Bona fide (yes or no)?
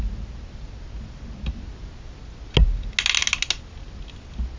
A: yes